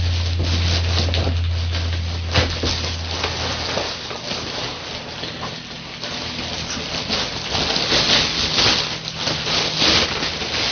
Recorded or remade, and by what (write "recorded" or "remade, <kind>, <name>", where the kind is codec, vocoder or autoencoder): recorded